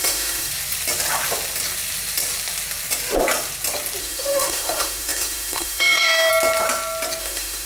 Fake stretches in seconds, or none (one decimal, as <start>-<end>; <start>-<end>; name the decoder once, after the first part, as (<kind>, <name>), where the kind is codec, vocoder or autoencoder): 0.0-0.5 (autoencoder, DAC-VAE); 4.0-6.3; 7.2-7.7